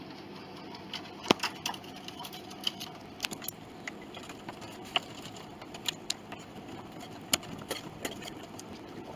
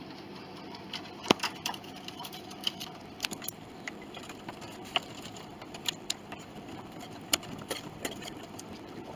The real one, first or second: first